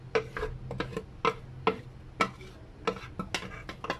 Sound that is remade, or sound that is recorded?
recorded